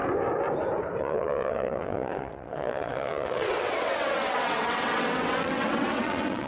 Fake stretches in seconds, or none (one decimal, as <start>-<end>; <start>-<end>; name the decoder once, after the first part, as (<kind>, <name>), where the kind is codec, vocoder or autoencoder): 1.0-6.5 (vocoder, WaveNeXt)